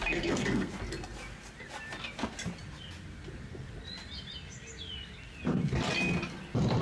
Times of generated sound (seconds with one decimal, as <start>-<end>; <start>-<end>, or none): 0.0-0.7